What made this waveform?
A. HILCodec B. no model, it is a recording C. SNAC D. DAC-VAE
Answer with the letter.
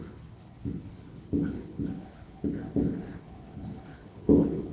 A